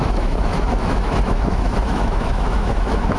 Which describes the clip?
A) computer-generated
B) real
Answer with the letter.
A